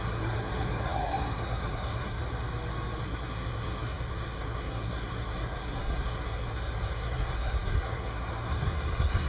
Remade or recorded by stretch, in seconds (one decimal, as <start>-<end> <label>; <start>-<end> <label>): 0.0-2.2 remade; 2.2-3.0 recorded; 3.0-9.3 remade